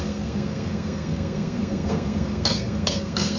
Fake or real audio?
fake